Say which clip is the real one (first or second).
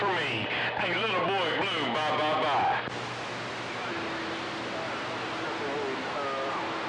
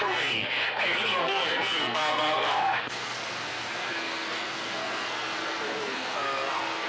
first